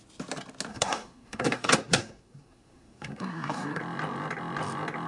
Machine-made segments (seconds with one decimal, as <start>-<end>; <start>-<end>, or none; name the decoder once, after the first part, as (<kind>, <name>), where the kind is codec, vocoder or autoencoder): 0.7-3.8 (codec, SNAC)

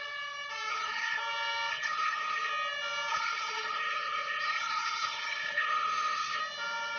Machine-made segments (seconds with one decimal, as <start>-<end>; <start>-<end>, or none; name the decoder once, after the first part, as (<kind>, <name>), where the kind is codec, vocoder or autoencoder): 0.7-1.2 (codec, HILCodec); 1.7-2.5; 3.1-6.4

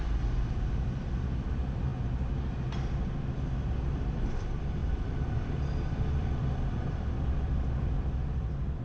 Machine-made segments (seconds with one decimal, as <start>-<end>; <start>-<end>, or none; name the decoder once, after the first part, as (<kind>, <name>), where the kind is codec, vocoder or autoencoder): 0.0-1.9 (vocoder, BigVGAN v2); 3.8-8.8

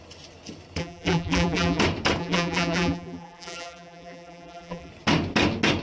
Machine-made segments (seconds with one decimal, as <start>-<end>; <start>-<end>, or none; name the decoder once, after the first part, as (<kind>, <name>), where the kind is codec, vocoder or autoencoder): 0.8-1.8 (vocoder, BigVGAN v2); 2.2-4.9

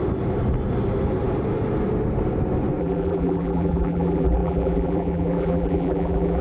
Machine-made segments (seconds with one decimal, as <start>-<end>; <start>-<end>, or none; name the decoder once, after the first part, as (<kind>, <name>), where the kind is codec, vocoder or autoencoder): 2.8-6.4 (vocoder, BigVGAN v2)

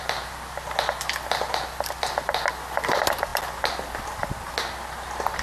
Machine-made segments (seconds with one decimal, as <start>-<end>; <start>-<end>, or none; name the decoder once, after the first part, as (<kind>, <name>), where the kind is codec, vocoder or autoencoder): none

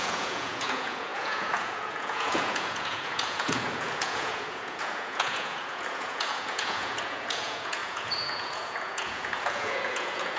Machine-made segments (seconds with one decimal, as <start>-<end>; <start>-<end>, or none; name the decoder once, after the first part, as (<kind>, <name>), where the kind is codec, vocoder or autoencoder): 0.0-10.4 (vocoder, Vocos)

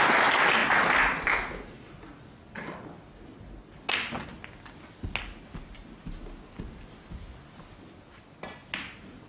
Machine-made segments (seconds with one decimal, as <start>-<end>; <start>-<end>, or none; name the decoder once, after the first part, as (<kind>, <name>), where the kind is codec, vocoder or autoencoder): none